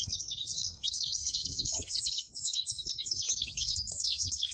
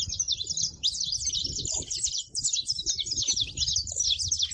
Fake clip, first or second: first